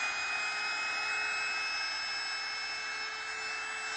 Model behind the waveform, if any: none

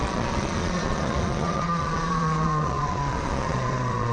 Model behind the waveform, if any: vocoder, Vocos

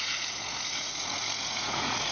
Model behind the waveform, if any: vocoder, Vocos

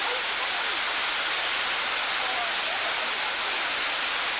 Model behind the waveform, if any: none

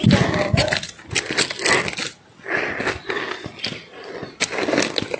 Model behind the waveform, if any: none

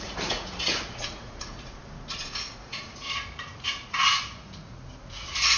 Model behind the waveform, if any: vocoder, Vocos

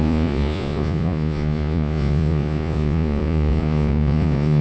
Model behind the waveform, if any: vocoder, Vocos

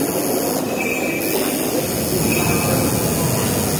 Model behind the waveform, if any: none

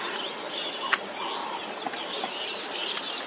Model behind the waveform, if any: none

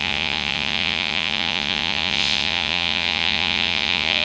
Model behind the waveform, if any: vocoder, Vocos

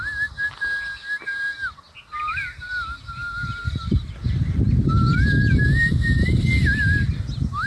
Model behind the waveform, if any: none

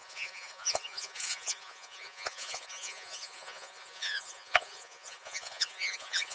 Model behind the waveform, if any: vocoder, Vocos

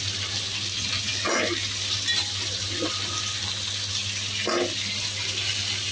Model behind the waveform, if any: none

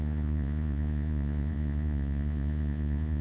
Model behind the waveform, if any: vocoder, Vocos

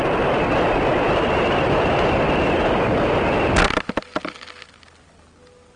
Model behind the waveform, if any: none